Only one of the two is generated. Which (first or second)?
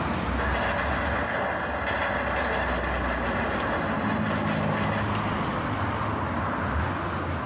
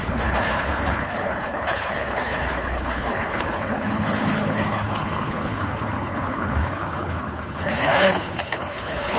second